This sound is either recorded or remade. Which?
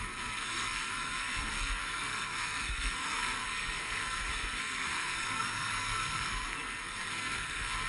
remade